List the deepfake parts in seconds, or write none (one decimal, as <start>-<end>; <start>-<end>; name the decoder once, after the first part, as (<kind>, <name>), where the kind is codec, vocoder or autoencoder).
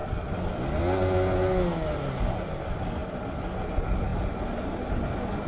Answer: none